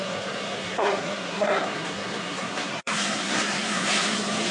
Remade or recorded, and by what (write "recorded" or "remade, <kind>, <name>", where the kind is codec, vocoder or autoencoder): remade, codec, SNAC